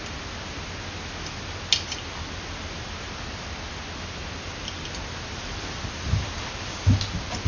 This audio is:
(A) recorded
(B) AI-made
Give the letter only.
A